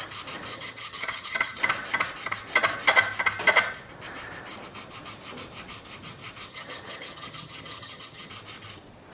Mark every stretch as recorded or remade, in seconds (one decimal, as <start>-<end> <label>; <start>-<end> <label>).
0.0-0.5 recorded; 0.5-1.6 remade; 1.6-6.5 recorded; 6.5-8.3 remade; 8.3-9.1 recorded